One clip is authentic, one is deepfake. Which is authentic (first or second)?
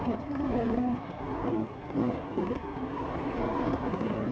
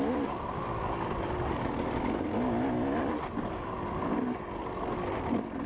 second